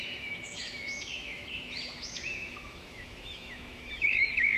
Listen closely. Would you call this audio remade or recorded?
remade